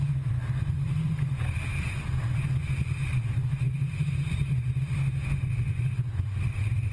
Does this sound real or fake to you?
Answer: real